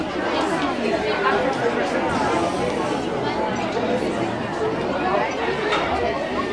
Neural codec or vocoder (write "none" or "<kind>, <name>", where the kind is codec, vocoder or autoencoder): none